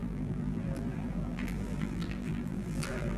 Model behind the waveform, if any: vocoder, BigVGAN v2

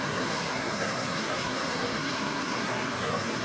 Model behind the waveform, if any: codec, SNAC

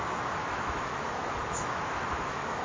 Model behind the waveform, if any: autoencoder, DAC-VAE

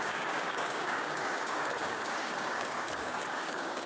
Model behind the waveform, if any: codec, DAC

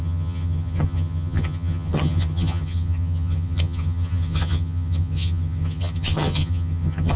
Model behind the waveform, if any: vocoder, HiFi-GAN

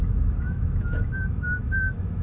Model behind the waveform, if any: autoencoder, DAC-VAE